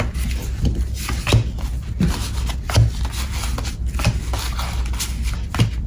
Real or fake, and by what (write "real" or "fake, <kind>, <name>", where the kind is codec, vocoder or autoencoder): real